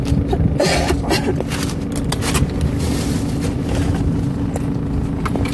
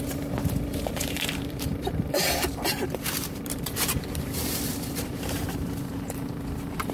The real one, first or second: first